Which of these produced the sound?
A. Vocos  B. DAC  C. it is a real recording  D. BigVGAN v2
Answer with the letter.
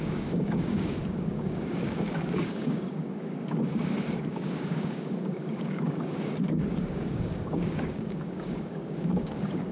B